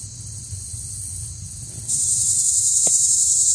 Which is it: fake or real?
real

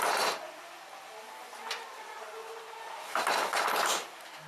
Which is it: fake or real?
real